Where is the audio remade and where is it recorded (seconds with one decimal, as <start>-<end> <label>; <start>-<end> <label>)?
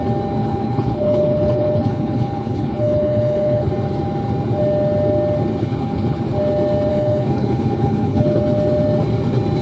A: 0.0-0.4 recorded; 0.4-3.7 remade; 3.7-5.6 recorded; 5.6-6.2 remade; 6.2-6.9 recorded; 6.9-8.4 remade; 8.4-9.6 recorded